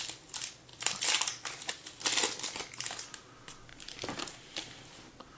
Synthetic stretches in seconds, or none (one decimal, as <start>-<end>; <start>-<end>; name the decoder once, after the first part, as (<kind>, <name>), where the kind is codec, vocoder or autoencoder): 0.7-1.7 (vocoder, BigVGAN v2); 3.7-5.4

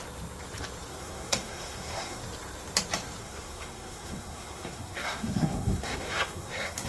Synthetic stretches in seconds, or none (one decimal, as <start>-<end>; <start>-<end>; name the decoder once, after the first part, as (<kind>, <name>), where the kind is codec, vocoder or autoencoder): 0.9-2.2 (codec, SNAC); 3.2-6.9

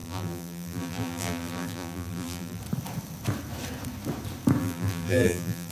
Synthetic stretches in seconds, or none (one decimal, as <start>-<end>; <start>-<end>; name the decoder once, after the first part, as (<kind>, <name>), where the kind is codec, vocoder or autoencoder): 0.0-2.6 (vocoder, BigVGAN v2); 4.6-5.7

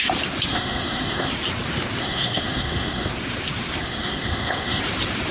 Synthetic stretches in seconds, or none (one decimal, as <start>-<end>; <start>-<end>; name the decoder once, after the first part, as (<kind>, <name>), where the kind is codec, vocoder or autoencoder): 0.5-1.3 (codec, SNAC); 2.0-3.1; 3.8-4.8